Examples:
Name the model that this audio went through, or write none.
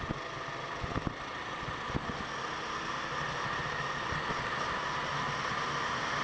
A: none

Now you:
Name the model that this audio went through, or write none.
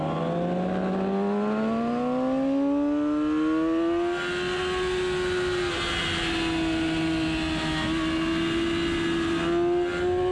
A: none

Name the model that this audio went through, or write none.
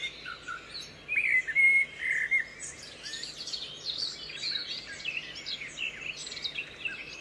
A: none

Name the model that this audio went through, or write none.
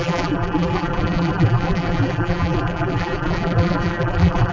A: vocoder, BigVGAN v2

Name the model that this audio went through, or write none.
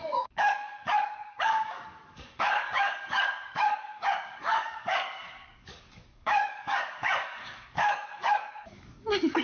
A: codec, DAC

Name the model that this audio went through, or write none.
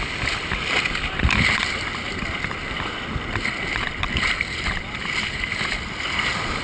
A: none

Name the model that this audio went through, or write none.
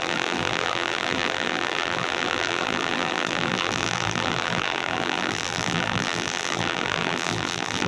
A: vocoder, BigVGAN v2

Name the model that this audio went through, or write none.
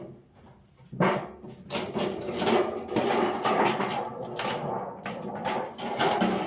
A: none